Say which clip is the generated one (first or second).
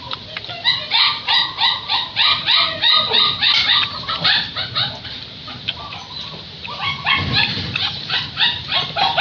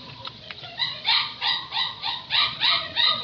second